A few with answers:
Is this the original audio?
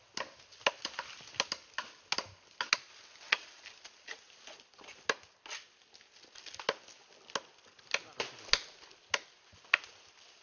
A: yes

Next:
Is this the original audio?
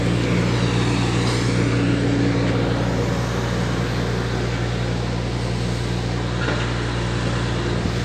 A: yes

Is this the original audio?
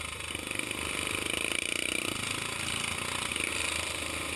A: yes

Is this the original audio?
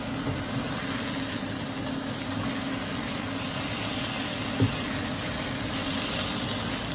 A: yes